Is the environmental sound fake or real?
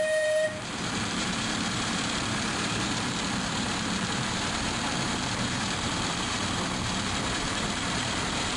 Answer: fake